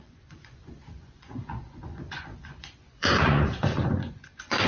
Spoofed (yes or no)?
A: yes